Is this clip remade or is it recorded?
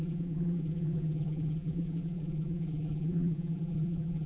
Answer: remade